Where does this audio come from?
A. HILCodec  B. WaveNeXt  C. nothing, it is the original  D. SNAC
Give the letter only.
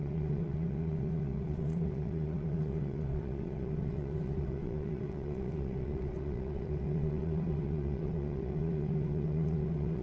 B